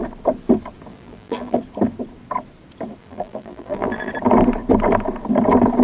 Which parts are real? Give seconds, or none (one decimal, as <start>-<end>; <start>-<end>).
0.0-0.9; 1.6-3.0; 4.1-5.8